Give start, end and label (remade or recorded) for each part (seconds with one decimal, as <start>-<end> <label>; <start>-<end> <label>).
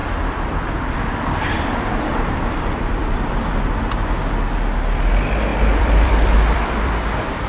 0.0-3.3 remade; 3.3-5.5 recorded; 5.5-7.5 remade